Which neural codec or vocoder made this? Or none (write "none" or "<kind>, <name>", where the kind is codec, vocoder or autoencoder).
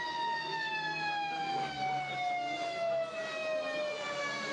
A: none